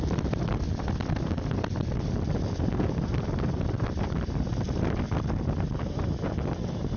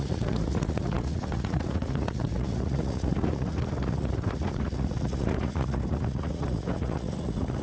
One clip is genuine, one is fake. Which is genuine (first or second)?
first